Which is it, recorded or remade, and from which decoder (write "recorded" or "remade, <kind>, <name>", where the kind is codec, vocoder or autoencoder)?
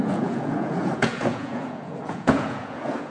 remade, vocoder, Vocos